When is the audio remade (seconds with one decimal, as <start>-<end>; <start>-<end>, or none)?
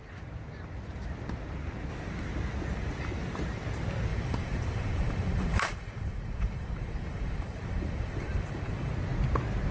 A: 4.1-8.9